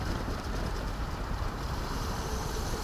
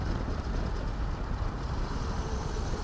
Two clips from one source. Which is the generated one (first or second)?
first